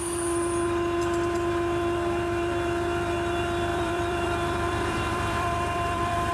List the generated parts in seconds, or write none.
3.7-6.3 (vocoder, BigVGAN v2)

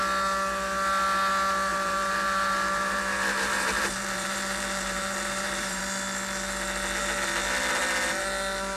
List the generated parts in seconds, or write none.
1.7-5.8 (vocoder, BigVGAN v2)

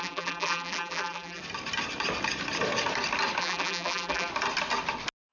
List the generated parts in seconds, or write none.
0.0-1.4 (vocoder, BigVGAN v2); 3.4-4.3

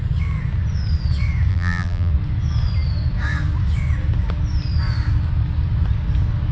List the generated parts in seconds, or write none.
1.5-2.1 (vocoder, BigVGAN v2)

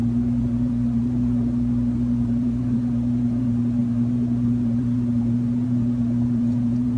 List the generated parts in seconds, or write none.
0.0-7.0 (vocoder, BigVGAN v2)

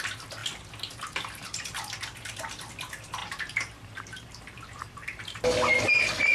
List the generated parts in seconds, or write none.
3.2-5.4 (vocoder, BigVGAN v2)

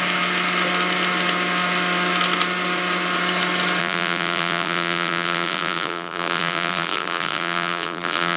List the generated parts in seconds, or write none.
3.8-8.4 (vocoder, BigVGAN v2)

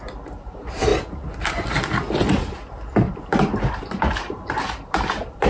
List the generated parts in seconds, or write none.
0.0-0.9 (vocoder, BigVGAN v2); 3.1-5.5